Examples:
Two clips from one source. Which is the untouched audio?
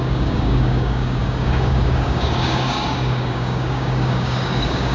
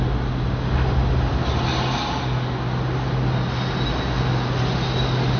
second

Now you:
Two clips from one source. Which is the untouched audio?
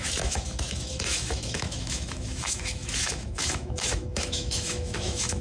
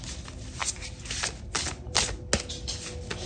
second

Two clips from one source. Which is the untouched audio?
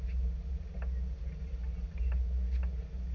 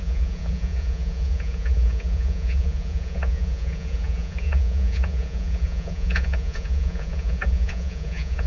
first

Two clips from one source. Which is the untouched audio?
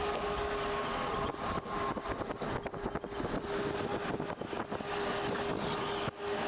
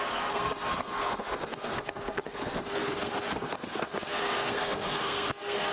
first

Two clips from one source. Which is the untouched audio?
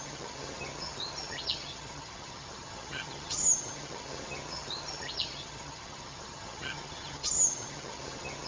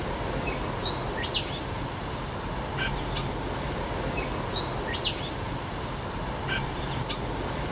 second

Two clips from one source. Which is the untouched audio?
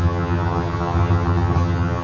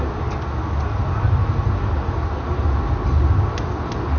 second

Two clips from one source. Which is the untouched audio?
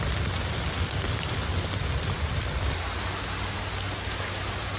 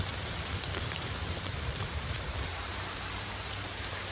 first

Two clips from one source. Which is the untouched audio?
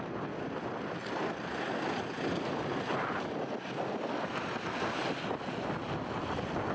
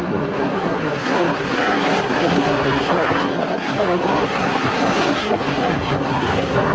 first